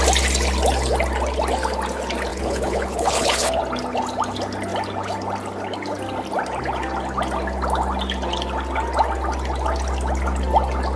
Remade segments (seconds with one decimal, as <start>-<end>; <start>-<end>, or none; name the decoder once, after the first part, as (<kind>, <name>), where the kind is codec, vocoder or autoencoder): 2.3-3.6 (codec, HILCodec)

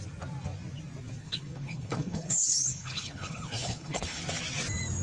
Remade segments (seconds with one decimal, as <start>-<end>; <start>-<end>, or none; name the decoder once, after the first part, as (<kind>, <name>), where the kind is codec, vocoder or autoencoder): 1.2-4.2 (codec, HILCodec)

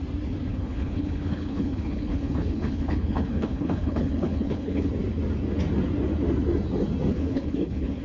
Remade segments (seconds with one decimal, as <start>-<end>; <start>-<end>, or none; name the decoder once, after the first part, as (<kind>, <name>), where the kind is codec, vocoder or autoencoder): 0.5-4.9 (codec, HILCodec); 7.1-8.0

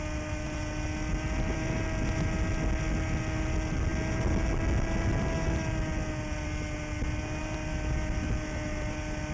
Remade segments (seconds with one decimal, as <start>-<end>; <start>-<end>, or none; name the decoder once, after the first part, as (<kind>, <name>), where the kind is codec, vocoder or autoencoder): none